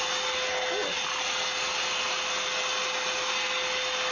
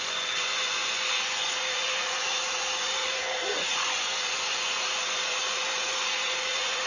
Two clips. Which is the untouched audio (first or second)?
first